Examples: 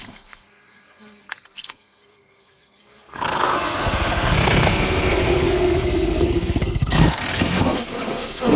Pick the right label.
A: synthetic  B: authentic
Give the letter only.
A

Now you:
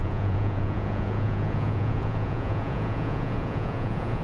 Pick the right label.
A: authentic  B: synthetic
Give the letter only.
B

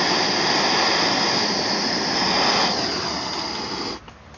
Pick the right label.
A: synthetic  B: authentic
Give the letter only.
B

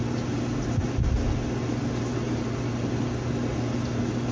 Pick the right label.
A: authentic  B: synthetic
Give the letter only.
B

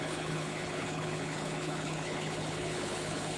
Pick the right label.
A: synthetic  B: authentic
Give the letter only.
A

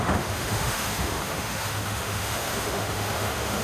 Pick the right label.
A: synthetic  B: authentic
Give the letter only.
A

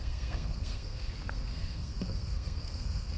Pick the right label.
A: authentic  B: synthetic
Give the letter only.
B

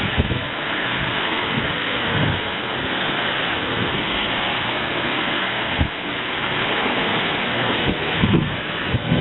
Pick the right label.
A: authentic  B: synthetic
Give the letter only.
B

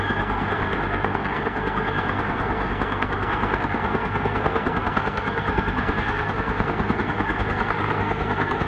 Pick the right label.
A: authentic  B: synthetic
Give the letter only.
B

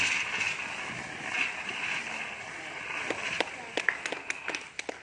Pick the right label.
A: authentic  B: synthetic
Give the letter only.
A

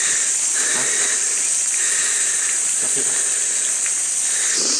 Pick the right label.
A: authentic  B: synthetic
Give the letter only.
A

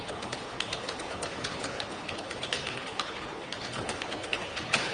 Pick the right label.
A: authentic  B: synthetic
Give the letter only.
B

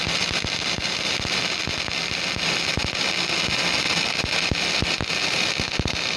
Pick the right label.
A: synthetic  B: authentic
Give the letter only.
B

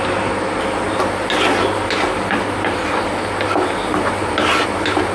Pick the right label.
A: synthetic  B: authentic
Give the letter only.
B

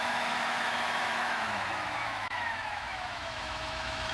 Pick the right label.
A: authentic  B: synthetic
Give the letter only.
B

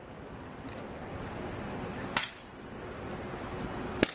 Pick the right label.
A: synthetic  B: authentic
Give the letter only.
B